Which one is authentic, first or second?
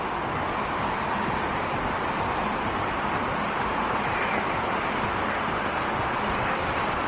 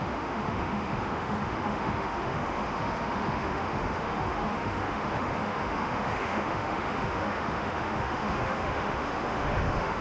first